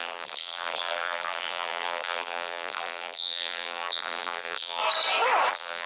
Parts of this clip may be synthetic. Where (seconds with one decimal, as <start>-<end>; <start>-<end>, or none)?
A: 0.0-4.8; 5.5-5.9